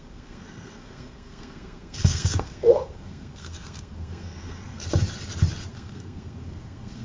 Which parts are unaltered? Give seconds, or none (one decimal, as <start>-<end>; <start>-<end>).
4.8-5.7